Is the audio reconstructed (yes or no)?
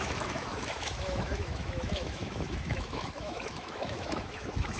yes